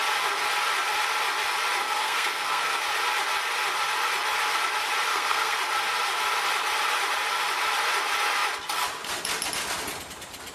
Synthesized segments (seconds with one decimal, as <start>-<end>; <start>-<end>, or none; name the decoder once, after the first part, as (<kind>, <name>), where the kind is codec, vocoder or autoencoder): 1.8-2.8 (codec, SNAC); 5.1-5.6